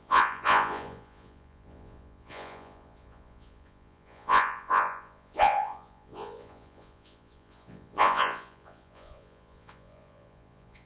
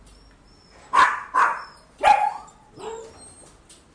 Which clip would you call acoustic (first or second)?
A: second